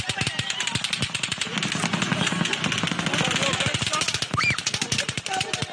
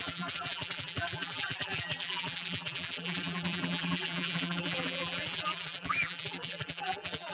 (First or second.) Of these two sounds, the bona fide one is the first